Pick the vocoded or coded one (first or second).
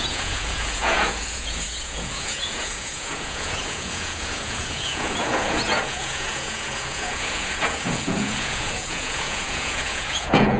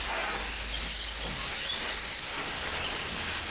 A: first